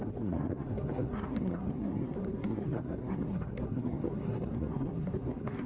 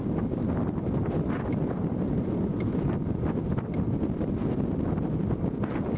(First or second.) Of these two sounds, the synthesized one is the first